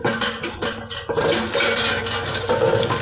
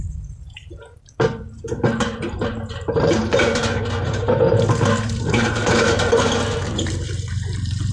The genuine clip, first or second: first